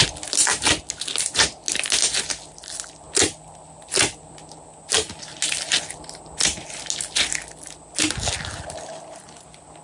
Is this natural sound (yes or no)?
yes